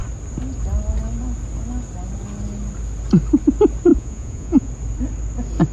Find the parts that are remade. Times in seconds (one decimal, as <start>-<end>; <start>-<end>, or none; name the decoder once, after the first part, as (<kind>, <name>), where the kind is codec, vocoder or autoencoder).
3.9-4.7 (vocoder, Vocos)